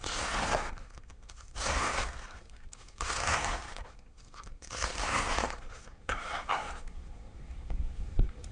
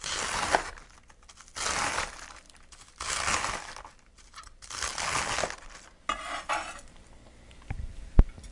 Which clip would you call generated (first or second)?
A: first